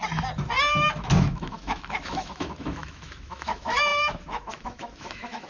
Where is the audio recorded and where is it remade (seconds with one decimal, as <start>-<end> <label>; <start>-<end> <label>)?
0.0-1.0 recorded; 1.0-5.5 remade